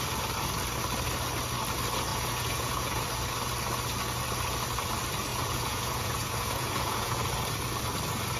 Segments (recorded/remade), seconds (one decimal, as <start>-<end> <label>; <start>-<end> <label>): 0.0-2.1 recorded; 2.1-3.0 remade; 3.0-5.3 recorded; 5.3-7.2 remade; 7.2-8.4 recorded